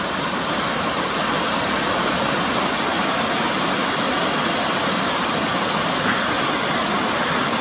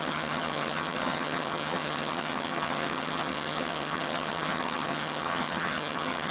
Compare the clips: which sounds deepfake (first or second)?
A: second